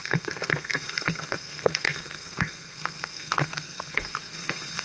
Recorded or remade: remade